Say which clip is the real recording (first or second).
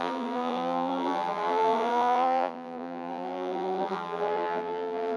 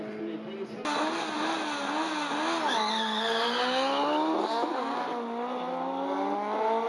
second